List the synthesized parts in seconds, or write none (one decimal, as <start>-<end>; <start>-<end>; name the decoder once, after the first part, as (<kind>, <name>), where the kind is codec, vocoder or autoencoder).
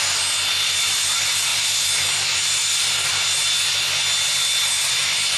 none